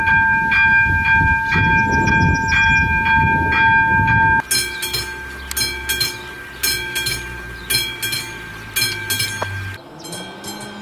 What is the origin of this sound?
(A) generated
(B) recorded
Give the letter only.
B